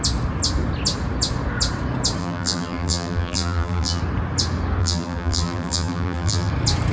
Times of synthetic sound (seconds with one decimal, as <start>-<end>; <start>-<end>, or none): 2.2-4.0; 4.8-6.5

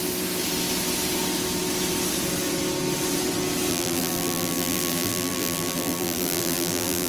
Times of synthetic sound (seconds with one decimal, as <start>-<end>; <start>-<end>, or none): 3.7-7.1

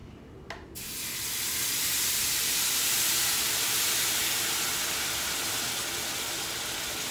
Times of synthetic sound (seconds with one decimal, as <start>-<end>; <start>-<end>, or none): 3.4-7.1

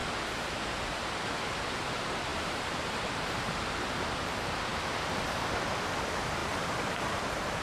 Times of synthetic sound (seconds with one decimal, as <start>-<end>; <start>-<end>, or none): 1.4-4.7; 5.3-7.6

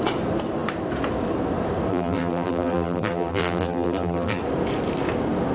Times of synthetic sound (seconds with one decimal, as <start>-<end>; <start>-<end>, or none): 1.9-4.4

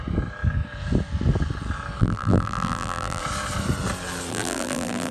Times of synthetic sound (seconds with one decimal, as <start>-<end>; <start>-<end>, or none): 2.0-3.2; 4.3-5.1

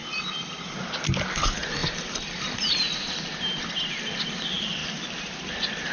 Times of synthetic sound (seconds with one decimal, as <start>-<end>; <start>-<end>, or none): 0.0-0.9; 1.8-2.7